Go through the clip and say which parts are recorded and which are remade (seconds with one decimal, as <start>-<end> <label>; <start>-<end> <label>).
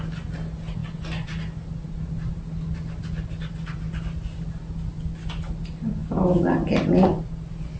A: 0.0-7.8 recorded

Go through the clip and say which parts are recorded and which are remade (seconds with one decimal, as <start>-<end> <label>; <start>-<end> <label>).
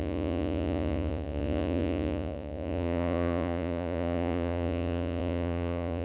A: 0.0-6.0 remade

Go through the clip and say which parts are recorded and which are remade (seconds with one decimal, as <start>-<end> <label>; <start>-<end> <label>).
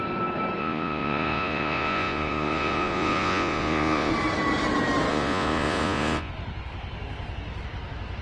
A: 0.0-0.6 recorded; 0.6-4.1 remade; 4.1-5.1 recorded; 5.1-6.3 remade; 6.3-8.2 recorded